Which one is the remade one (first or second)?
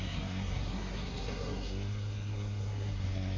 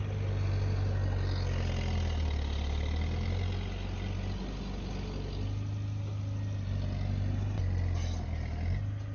first